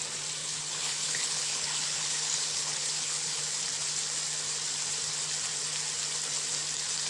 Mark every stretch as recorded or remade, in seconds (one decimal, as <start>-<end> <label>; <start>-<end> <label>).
0.0-0.4 recorded; 0.4-3.4 remade; 3.4-7.1 recorded